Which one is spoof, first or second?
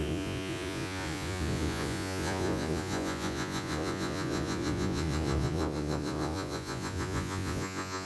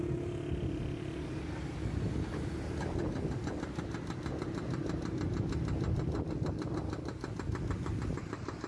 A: first